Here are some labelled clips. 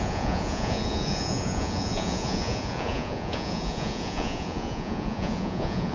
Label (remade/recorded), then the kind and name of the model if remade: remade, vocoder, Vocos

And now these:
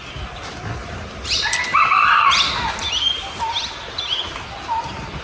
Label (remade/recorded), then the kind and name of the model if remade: recorded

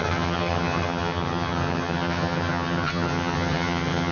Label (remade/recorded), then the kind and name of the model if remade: remade, vocoder, HiFi-GAN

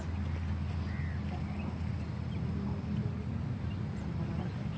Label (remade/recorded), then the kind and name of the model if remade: recorded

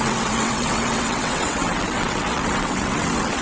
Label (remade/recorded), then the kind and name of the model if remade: remade, vocoder, WaveNeXt